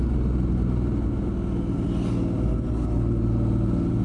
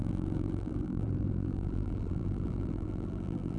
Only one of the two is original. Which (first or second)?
first